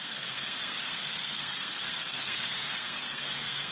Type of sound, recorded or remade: remade